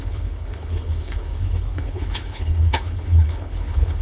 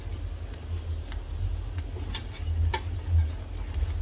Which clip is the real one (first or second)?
second